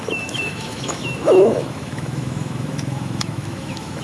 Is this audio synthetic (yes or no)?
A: yes